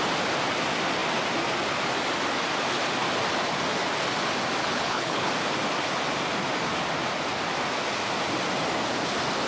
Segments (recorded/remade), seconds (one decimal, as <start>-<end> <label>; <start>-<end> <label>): 0.0-4.6 recorded; 4.6-5.3 remade; 5.3-9.5 recorded